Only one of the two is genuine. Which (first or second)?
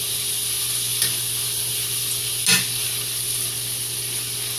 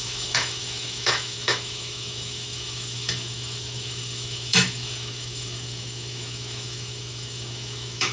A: first